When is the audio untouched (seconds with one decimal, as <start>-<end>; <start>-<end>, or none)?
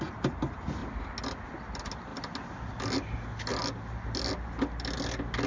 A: 0.0-5.5